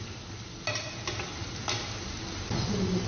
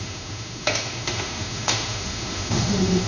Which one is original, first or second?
first